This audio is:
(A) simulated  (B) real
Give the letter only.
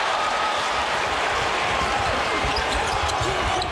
A